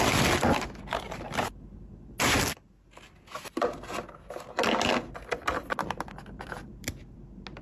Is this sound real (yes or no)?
yes